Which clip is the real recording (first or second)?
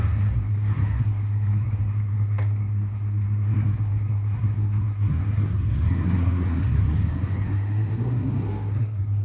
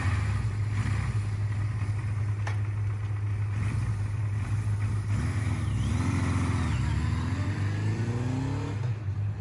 second